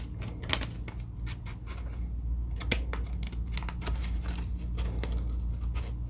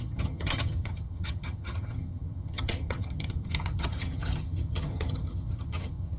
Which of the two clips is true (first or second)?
first